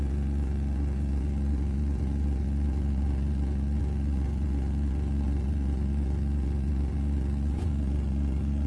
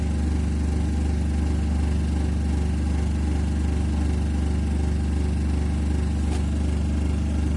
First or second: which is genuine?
second